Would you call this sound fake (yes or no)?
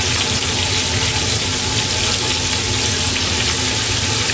no